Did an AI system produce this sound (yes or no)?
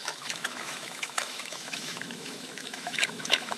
yes